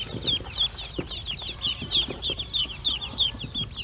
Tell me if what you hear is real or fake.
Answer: real